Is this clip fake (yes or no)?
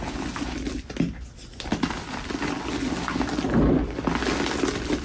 no